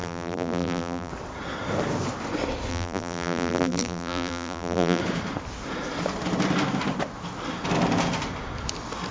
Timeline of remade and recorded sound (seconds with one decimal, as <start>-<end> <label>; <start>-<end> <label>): 0.0-1.1 remade; 1.1-2.7 recorded; 2.7-5.0 remade; 5.0-9.1 recorded